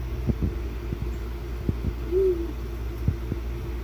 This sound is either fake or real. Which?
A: real